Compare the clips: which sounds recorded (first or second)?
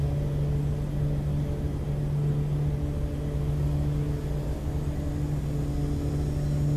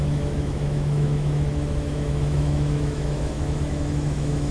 first